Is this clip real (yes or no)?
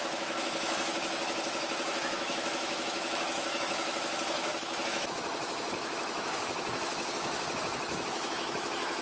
no